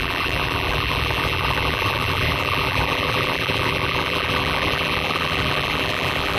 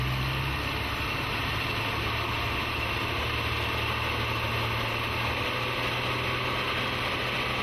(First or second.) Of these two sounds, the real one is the second